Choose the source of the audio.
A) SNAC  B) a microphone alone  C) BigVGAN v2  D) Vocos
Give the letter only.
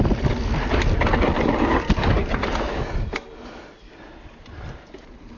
B